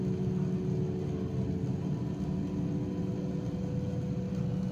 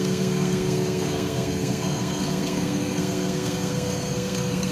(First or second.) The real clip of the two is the first